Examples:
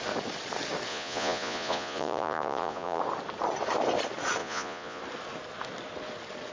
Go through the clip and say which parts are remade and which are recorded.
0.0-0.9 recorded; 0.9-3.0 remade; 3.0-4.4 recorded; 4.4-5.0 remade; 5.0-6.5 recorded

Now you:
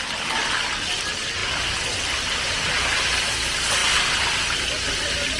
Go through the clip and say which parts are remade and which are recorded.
0.0-1.4 recorded; 1.4-3.3 remade; 3.3-3.8 recorded; 3.8-4.7 remade; 4.7-5.4 recorded

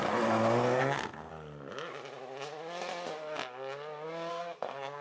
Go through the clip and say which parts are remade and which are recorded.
0.0-0.8 recorded; 0.8-1.3 remade; 1.3-4.3 recorded; 4.3-5.0 remade

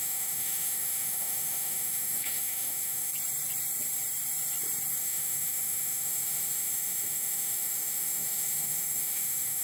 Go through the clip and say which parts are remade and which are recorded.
0.0-3.1 remade; 3.1-5.0 recorded; 5.0-9.6 remade

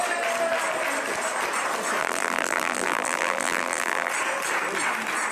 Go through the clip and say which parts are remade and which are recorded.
0.0-2.0 recorded; 2.0-4.1 remade; 4.1-5.3 recorded

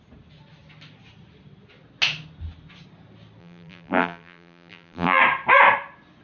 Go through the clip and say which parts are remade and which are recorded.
0.0-3.4 recorded; 3.4-5.2 remade; 5.2-6.2 recorded